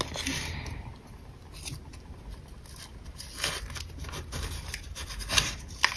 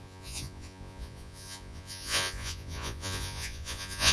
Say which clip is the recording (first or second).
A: first